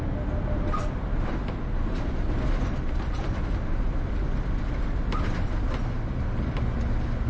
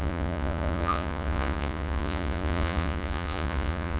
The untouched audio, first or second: first